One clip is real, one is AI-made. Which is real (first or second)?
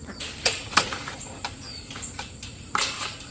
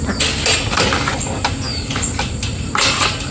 second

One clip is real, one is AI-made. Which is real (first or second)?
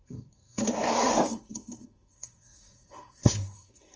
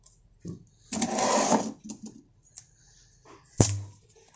second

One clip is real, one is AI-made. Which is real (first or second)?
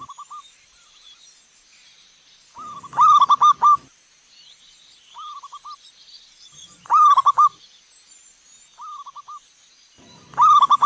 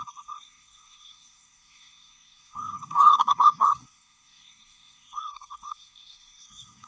first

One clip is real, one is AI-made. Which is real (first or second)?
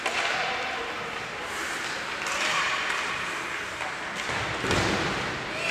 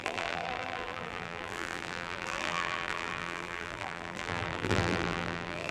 first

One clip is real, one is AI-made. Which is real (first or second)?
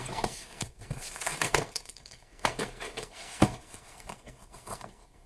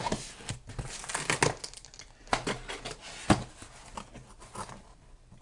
second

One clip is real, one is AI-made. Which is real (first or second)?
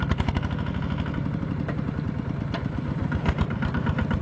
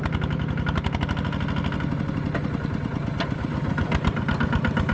second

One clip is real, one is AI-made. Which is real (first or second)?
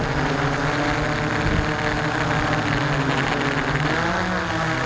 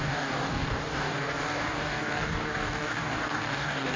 first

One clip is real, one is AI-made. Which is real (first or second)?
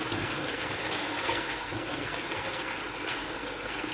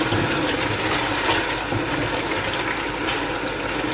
second